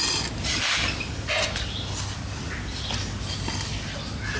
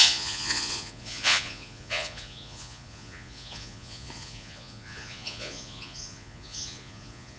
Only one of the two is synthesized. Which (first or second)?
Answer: second